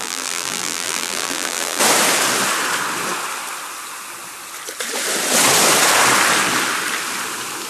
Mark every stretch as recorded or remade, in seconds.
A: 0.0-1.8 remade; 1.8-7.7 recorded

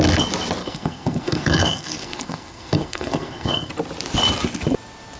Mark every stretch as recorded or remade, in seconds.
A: 0.0-0.6 recorded; 0.6-3.7 remade; 3.7-5.2 recorded

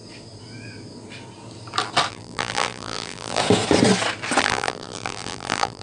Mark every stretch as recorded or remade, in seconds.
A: 0.0-2.1 recorded; 2.1-3.4 remade; 3.4-4.4 recorded; 4.4-5.8 remade

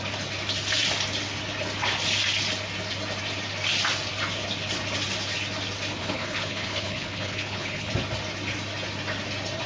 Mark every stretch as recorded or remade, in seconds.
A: 0.0-6.0 recorded; 6.0-7.9 remade; 7.9-9.7 recorded

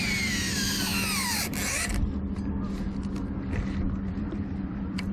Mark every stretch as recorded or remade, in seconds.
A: 0.0-0.9 remade; 0.9-4.0 recorded; 4.0-5.1 remade

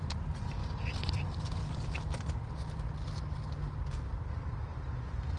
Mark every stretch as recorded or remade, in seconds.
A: 0.0-5.4 recorded

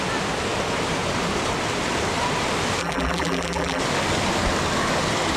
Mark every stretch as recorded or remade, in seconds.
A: 0.0-2.8 recorded; 2.8-3.8 remade; 3.8-5.4 recorded